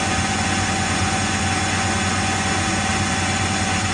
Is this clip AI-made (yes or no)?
yes